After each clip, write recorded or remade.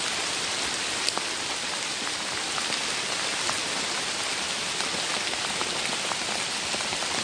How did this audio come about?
recorded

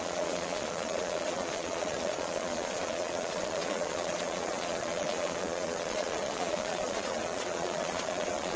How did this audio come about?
remade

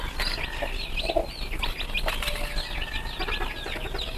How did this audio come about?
recorded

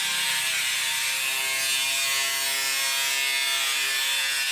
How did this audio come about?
recorded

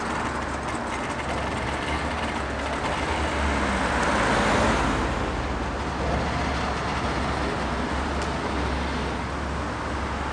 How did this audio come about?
recorded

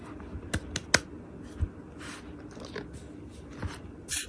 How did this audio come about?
recorded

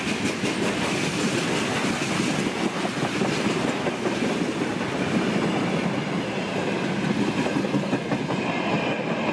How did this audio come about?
recorded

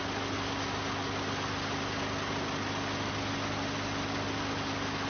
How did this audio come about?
recorded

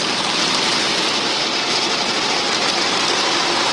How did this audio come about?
recorded